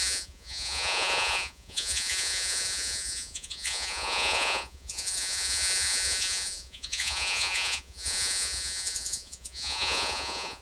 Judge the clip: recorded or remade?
remade